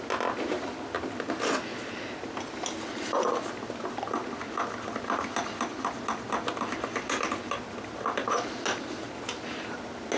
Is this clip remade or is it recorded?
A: recorded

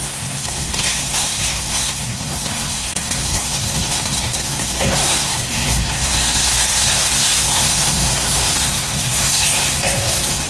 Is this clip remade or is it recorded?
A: remade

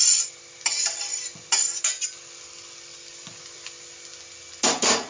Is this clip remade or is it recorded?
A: recorded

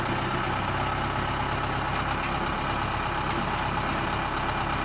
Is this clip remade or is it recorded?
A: recorded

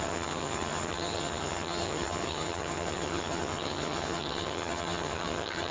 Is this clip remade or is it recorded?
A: remade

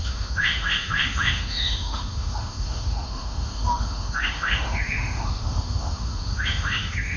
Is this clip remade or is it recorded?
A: remade